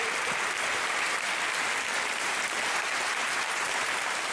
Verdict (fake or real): fake